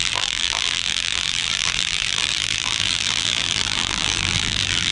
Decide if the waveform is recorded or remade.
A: remade